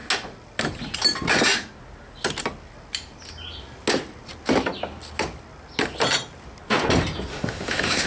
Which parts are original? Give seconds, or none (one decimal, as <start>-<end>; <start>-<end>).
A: 0.0-7.3

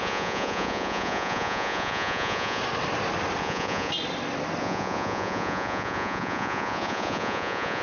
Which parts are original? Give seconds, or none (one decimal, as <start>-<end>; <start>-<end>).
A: 2.6-3.4; 3.9-4.6

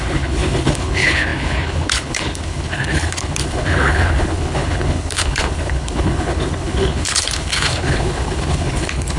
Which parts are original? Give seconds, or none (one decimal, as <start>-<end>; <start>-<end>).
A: none

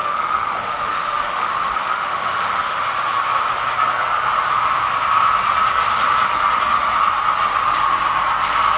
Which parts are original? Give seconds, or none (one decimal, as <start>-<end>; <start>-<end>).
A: 2.8-8.8